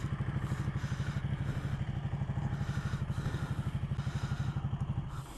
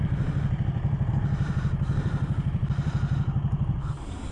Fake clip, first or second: second